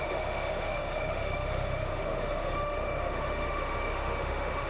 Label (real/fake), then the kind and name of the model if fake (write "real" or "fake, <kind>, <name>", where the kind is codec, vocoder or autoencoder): fake, autoencoder, DAC-VAE